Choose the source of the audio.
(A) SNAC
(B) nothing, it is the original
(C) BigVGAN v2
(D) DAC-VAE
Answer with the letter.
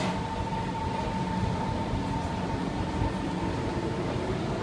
B